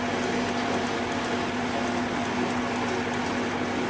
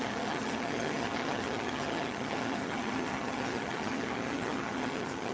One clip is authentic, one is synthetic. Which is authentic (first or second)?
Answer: first